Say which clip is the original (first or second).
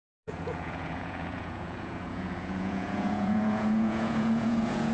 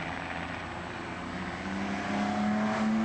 second